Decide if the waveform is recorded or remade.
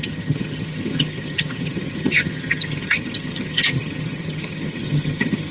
remade